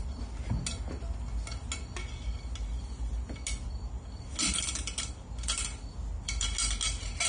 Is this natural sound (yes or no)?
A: yes